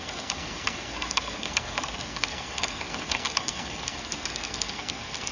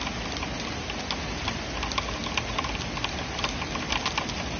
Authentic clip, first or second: second